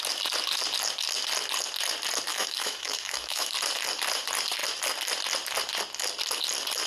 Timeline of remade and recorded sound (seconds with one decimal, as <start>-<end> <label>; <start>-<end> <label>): 0.0-2.3 recorded; 2.3-3.5 remade; 3.5-6.9 recorded